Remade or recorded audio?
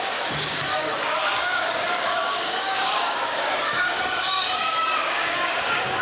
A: remade